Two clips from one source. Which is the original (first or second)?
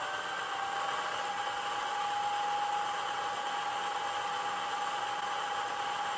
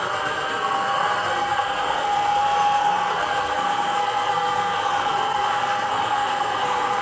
first